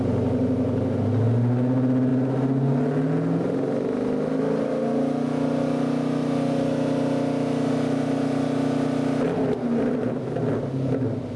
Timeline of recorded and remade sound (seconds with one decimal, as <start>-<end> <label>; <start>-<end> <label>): 0.0-11.4 recorded